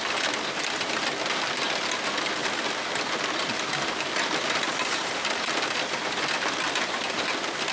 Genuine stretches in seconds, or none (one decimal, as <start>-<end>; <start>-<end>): 0.0-7.7